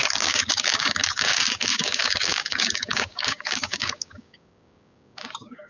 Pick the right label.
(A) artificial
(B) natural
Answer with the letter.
A